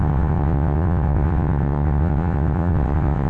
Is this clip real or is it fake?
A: fake